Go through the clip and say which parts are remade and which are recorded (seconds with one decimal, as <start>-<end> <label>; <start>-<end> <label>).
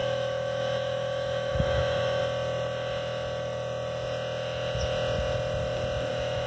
0.0-2.2 remade; 2.2-6.1 recorded; 6.1-6.5 remade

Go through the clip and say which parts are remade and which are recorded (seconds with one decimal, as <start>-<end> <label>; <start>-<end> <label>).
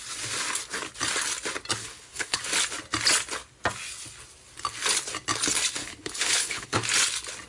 0.0-1.8 recorded; 1.8-2.4 remade; 2.4-5.8 recorded; 5.8-6.8 remade; 6.8-7.5 recorded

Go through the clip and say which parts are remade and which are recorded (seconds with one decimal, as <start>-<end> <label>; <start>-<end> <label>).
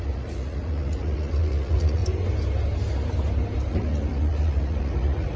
0.0-2.0 remade; 2.0-3.7 recorded; 3.7-5.4 remade